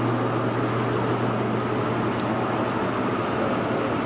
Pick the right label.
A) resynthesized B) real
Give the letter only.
B